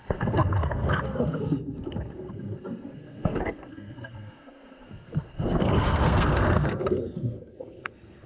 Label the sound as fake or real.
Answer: fake